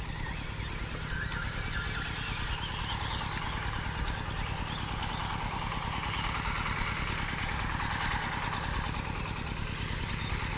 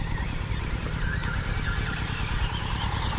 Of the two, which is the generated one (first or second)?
second